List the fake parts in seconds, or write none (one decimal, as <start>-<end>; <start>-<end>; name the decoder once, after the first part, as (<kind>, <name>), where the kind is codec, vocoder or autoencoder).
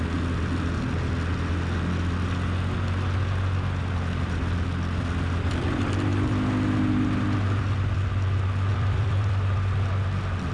8.7-9.3 (vocoder, BigVGAN v2)